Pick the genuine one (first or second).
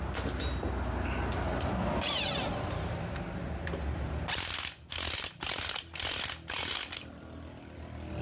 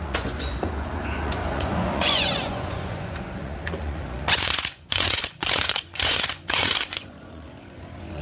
first